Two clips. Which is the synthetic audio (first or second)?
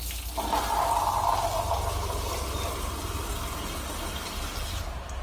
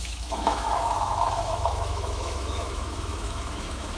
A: second